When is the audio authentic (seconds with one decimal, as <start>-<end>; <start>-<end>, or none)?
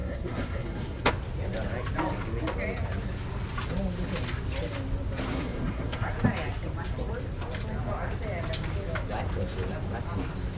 1.1-5.3; 6.1-10.6